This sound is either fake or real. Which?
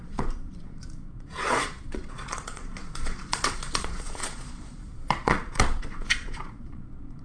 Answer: fake